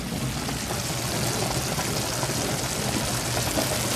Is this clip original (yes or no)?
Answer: yes